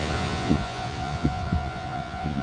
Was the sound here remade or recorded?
remade